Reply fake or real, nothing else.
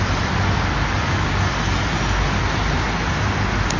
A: real